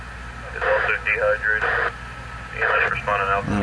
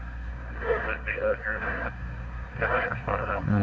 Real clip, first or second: first